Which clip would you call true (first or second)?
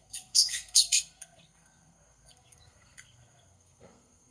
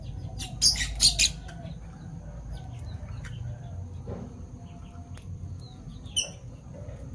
second